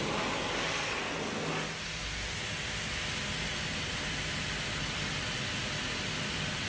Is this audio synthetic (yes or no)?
no